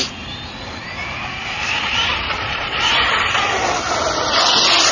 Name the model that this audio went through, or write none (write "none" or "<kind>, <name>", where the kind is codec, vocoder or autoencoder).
none